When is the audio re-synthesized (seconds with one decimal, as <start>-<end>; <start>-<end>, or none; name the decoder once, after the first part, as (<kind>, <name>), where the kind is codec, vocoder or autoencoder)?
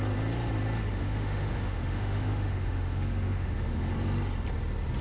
0.9-3.9 (autoencoder, DAC-VAE)